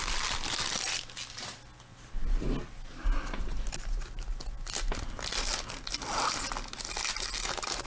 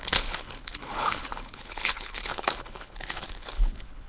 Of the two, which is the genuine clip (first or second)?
first